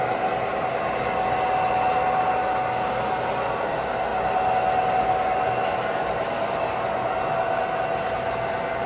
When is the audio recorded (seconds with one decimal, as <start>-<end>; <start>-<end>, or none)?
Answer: 0.0-8.9